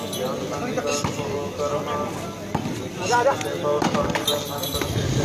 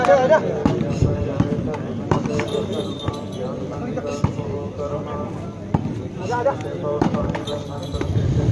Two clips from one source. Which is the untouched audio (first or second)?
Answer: first